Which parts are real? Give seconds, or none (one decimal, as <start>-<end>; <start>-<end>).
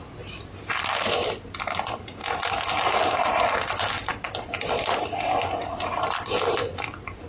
0.0-4.1; 6.7-7.3